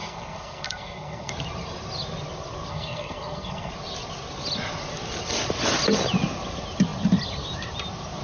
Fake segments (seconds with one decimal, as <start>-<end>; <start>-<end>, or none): 0.0-1.3; 2.7-3.7

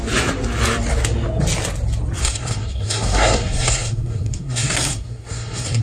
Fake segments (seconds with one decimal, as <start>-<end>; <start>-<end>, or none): 2.2-5.8

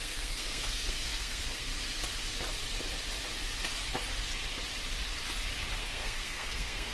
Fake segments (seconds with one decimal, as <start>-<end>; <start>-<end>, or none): 0.0-1.7; 5.8-6.9

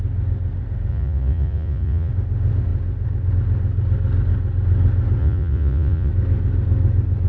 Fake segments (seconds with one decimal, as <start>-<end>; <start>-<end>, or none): 0.9-2.1; 5.2-6.1

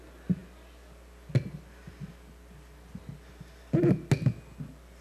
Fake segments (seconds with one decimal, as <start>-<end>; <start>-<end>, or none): none

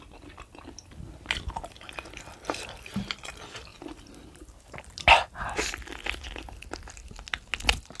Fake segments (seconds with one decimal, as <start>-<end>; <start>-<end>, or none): 3.7-4.8

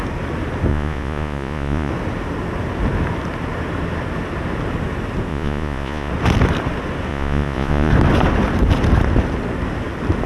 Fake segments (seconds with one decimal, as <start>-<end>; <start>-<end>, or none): 0.7-1.9; 5.3-6.1; 7.1-7.9

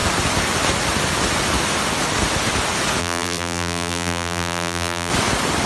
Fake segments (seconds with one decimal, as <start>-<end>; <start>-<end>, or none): 3.0-5.1